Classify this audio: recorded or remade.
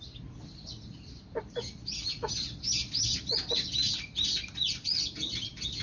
recorded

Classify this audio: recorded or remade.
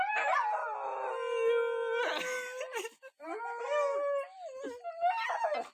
recorded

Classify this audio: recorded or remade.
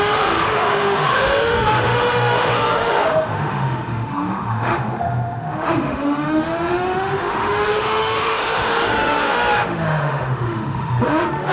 remade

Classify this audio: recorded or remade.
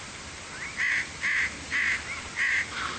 recorded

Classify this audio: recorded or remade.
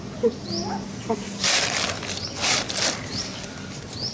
recorded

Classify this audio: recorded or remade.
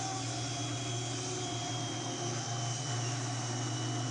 recorded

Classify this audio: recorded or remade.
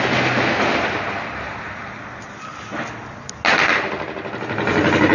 recorded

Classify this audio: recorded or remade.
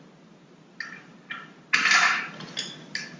recorded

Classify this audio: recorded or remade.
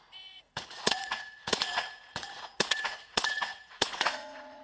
remade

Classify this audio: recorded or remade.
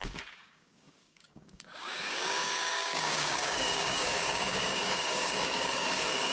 remade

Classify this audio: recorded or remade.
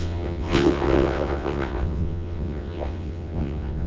remade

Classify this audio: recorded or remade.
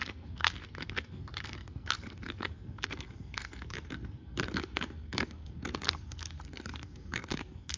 remade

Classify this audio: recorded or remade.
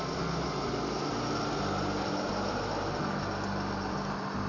recorded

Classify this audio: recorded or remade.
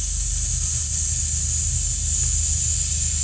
recorded